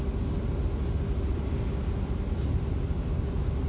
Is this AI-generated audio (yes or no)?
no